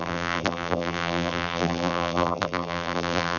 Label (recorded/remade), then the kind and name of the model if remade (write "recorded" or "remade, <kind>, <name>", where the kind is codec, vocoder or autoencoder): remade, vocoder, BigVGAN v2